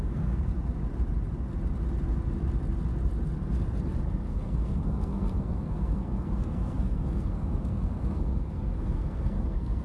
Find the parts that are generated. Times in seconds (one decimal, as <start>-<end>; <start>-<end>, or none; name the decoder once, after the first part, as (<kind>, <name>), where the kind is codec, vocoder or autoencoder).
0.0-0.5 (codec, SNAC); 4.3-9.8